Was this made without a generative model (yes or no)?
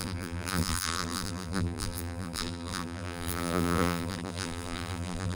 no